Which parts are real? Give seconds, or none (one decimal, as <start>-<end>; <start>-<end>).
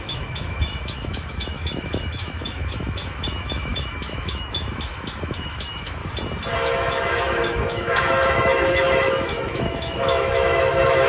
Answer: 6.0-6.6